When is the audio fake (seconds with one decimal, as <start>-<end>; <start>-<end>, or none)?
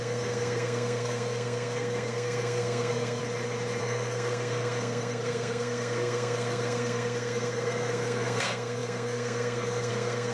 0.0-3.2; 3.8-10.3